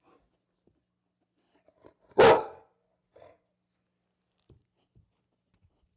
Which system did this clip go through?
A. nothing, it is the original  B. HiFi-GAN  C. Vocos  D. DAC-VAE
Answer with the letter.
A